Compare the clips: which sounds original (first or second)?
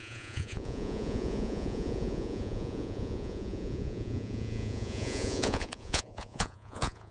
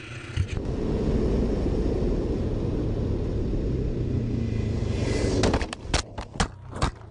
second